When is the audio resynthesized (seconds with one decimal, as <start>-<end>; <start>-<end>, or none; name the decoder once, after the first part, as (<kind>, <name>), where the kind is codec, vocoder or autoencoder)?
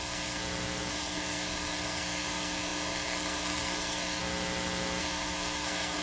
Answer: 0.0-0.4 (codec, SNAC); 0.9-4.2; 5.0-6.0